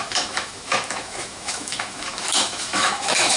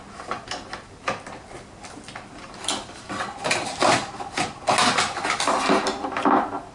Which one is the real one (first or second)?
second